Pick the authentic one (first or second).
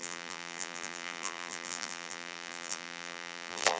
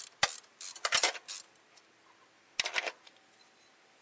second